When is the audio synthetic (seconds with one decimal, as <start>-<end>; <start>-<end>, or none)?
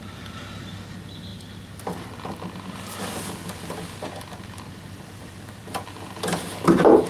none